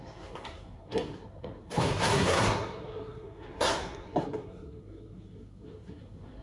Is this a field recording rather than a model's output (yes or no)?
no